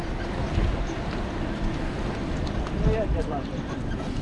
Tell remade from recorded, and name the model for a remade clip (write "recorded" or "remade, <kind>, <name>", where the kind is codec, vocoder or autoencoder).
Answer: recorded